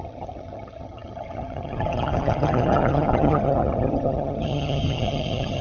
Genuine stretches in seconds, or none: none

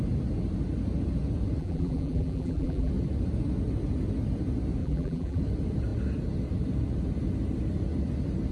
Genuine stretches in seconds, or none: 0.0-1.6; 2.9-4.8; 5.4-8.5